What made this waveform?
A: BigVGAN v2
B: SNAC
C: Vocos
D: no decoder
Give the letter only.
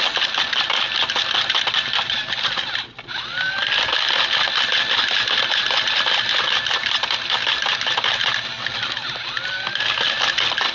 D